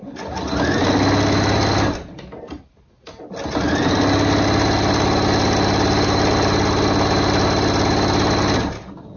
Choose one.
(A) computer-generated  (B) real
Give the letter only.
B